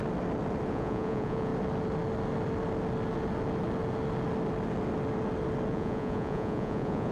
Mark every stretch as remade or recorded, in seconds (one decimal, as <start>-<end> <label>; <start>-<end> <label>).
0.0-0.7 recorded; 0.7-1.5 remade; 1.5-5.7 recorded; 5.7-7.1 remade